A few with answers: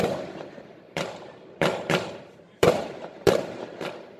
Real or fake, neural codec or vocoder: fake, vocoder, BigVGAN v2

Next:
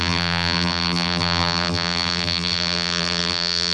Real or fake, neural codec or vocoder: fake, vocoder, BigVGAN v2